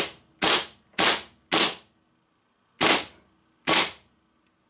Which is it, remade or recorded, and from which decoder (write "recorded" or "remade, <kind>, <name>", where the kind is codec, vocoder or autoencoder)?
recorded